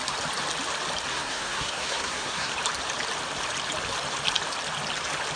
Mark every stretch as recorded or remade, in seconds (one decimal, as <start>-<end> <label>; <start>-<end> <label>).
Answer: 0.0-1.1 recorded; 1.1-2.5 remade; 2.5-5.4 recorded